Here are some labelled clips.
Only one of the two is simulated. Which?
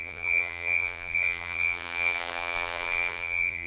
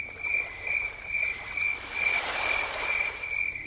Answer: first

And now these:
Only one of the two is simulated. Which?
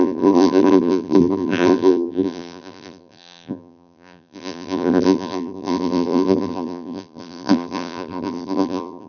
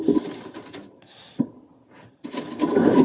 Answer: first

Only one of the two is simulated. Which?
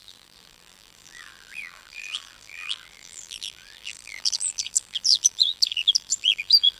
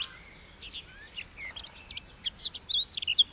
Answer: first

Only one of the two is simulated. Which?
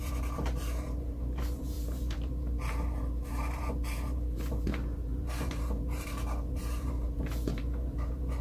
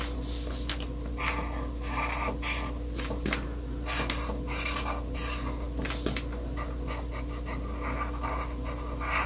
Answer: first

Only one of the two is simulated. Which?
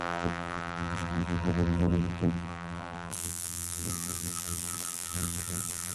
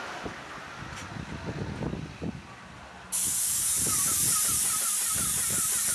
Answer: first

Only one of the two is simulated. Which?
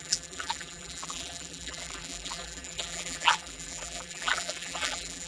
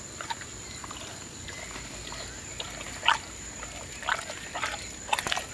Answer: first